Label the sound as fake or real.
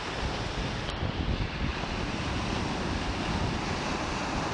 fake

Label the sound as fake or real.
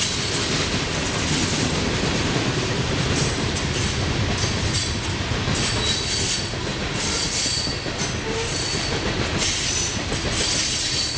real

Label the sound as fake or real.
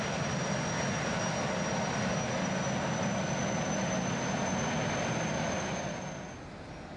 real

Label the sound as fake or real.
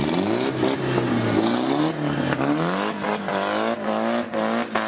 real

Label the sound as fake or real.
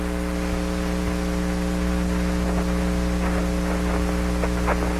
real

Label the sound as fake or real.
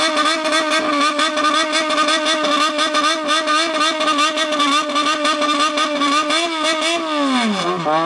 real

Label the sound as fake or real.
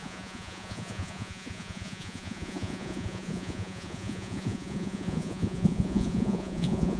fake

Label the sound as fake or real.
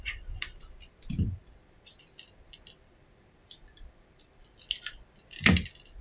real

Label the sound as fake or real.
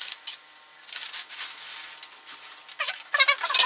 real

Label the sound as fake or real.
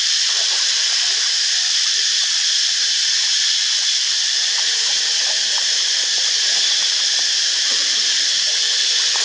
fake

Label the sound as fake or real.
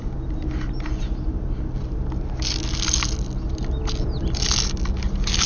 real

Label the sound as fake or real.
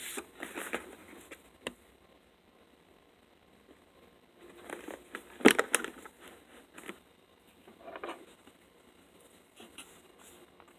real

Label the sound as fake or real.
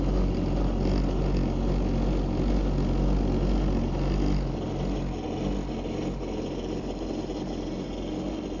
real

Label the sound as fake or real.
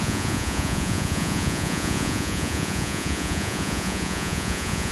fake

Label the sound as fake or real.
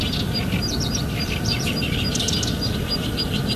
real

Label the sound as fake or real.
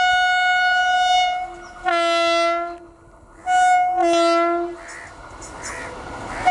real